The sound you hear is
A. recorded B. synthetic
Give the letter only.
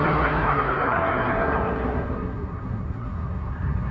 B